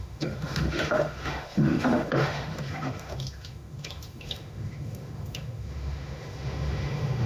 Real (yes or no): no